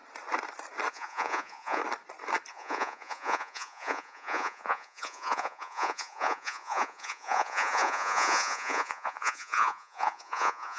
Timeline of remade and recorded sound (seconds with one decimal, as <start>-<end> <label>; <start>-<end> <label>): 0.0-0.9 recorded; 0.9-1.8 remade; 1.8-2.5 recorded; 2.5-10.8 remade